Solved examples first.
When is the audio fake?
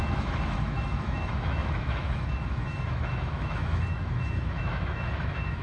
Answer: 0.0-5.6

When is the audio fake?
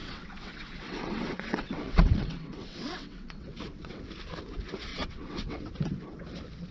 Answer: 0.0-4.0; 4.9-5.7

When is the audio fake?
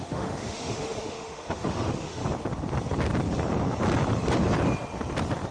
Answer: 0.0-2.2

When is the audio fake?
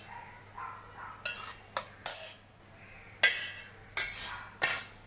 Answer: 2.1-2.6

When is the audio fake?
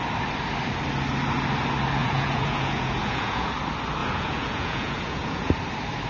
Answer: 2.0-3.5; 4.0-5.5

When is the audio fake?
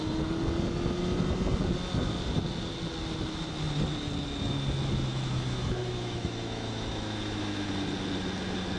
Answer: 5.1-7.7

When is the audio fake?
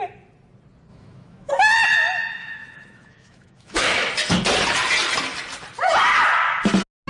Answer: 0.9-1.5; 2.4-4.1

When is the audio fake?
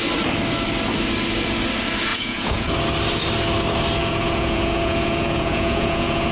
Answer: 2.1-2.7; 4.0-6.3